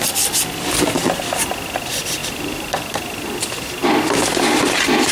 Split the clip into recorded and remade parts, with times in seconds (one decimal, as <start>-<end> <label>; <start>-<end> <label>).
0.0-2.2 recorded; 2.2-2.7 remade; 2.7-5.1 recorded